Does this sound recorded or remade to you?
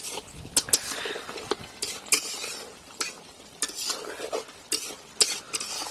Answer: recorded